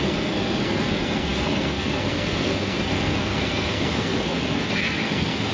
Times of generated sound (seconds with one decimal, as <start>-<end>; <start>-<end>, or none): 0.0-5.5